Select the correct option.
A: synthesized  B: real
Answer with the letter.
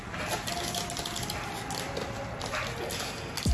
B